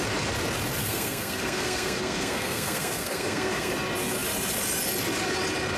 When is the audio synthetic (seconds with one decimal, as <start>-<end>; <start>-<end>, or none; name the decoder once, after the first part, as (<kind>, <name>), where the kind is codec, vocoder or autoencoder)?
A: 0.8-3.7 (codec, SNAC)